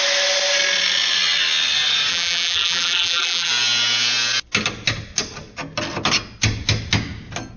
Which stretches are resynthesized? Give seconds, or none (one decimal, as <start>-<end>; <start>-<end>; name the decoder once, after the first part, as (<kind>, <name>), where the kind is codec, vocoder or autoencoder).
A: 2.1-3.5 (vocoder, BigVGAN v2)